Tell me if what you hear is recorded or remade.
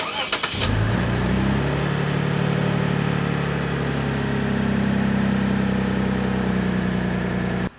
recorded